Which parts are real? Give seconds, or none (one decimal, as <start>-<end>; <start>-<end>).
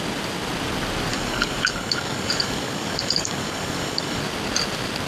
0.0-1.1; 4.2-5.1